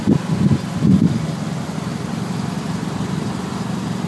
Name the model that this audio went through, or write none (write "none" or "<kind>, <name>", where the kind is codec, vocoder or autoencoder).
none